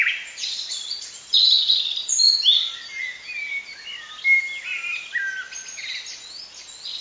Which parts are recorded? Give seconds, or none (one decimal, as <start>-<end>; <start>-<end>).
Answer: 0.0-7.0